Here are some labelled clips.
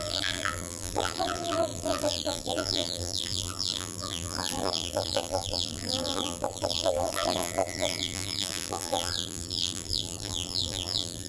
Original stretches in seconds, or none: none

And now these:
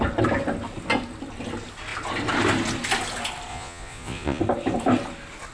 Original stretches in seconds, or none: 0.0-3.5; 4.4-5.5

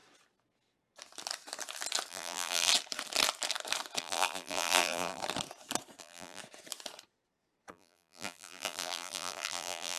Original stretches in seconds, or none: 0.0-2.1; 2.7-4.0; 5.2-6.0; 6.4-7.7

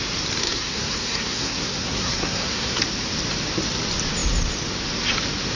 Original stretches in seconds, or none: 0.0-0.4; 2.8-5.6

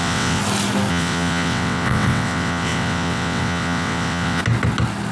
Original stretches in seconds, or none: 0.4-0.9; 4.4-5.1

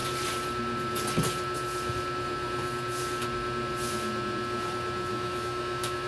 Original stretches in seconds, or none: 0.0-5.1

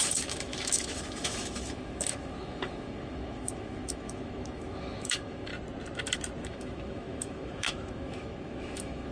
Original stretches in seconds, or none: 5.5-6.4

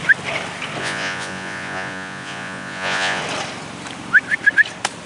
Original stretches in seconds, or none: 0.0-0.8; 3.2-5.1